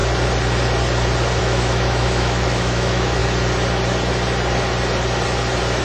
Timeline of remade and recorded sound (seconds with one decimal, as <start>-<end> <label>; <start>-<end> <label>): 0.0-1.4 recorded; 1.4-3.2 remade; 3.2-5.8 recorded